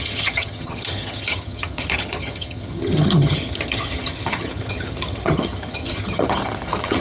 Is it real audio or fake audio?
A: fake